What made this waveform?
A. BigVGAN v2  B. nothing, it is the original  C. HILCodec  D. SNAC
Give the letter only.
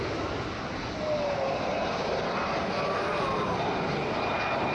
B